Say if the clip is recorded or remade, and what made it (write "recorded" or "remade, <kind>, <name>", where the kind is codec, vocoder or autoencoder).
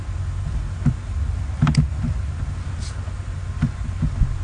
recorded